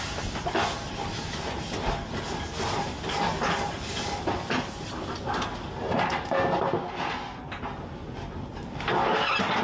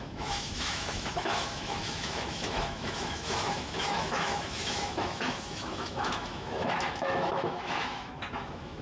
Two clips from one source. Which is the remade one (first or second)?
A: second